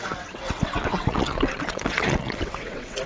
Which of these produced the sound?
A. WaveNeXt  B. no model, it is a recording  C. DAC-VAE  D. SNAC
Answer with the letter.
A